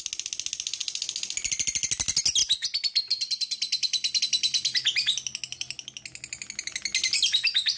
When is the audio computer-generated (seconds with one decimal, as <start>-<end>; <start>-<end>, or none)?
none